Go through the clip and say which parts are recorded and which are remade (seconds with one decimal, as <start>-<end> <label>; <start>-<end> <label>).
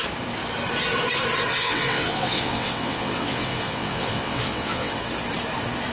0.0-1.5 recorded; 1.5-5.0 remade; 5.0-5.9 recorded